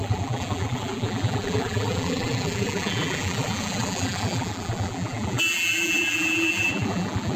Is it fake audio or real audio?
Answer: fake